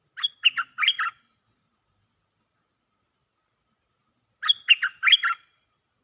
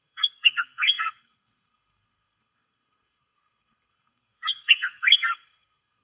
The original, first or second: first